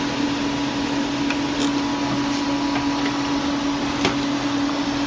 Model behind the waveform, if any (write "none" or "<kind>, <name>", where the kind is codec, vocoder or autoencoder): none